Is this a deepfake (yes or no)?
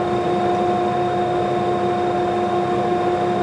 no